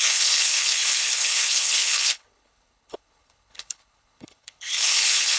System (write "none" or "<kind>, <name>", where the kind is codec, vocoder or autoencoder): codec, HILCodec